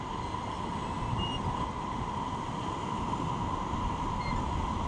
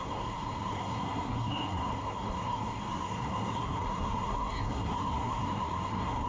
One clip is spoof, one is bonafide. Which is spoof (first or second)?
second